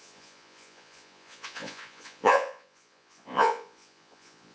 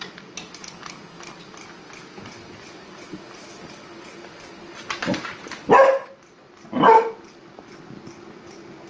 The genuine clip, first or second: second